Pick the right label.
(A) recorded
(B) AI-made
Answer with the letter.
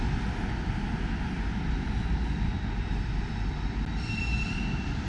A